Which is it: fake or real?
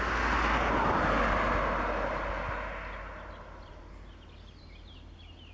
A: real